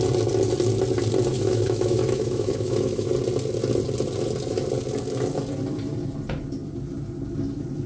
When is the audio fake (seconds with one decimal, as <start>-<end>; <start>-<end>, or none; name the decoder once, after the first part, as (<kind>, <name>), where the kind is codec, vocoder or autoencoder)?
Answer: 1.3-3.1 (autoencoder, DAC-VAE)